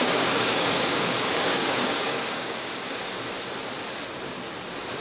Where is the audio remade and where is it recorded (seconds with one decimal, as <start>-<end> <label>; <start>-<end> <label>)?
0.0-3.0 remade; 3.0-5.0 recorded